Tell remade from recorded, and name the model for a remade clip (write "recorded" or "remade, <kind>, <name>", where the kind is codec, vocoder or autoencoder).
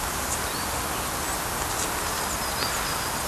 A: recorded